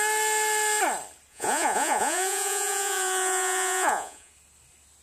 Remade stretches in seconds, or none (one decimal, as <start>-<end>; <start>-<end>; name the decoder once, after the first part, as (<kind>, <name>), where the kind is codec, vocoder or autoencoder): 1.3-4.3 (vocoder, Vocos)